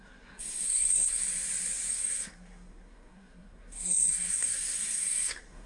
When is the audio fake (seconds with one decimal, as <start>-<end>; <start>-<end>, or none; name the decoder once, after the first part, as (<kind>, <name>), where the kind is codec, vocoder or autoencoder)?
0.0-1.2 (codec, SNAC); 1.9-5.7